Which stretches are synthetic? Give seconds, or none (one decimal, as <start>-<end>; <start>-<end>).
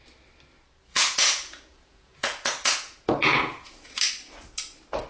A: 0.9-4.0